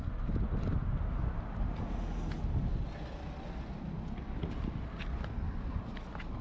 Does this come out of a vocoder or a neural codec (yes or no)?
no